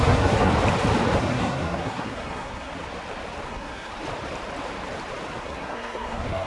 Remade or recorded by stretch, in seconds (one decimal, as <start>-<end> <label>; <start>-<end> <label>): 0.0-0.5 remade; 0.5-1.2 recorded; 1.2-2.7 remade; 2.7-3.5 recorded; 3.5-3.9 remade; 3.9-5.4 recorded; 5.4-6.5 remade